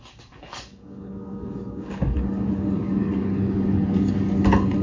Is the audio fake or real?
fake